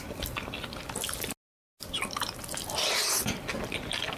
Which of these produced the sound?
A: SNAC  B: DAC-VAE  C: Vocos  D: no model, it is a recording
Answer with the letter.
D